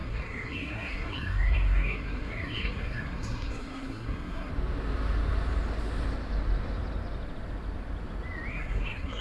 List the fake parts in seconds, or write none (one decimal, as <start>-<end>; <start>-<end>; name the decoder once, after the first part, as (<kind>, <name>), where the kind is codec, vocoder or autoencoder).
0.0-4.5 (codec, SNAC); 8.5-9.2